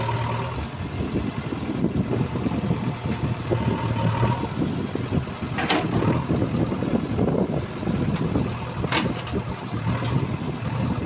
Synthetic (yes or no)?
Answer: no